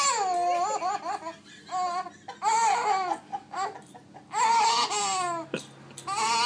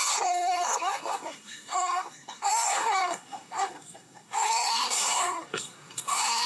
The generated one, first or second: second